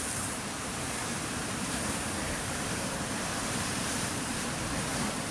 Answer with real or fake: fake